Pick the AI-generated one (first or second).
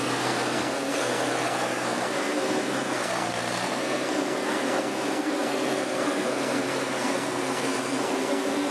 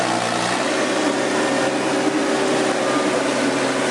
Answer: first